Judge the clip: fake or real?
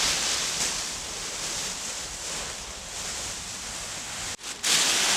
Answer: real